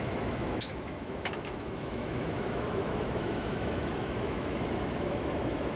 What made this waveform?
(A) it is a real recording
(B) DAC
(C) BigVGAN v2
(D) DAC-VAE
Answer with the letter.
D